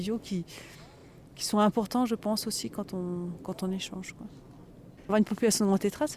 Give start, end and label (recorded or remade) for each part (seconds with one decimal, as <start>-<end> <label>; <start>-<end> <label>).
0.0-6.2 recorded